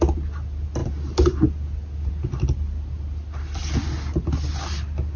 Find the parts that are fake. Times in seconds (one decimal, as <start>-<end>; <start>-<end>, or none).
none